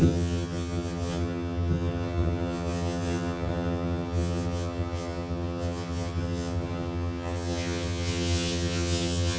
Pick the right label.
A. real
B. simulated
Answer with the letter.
B